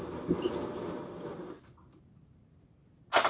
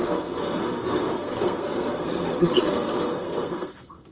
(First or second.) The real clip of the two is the first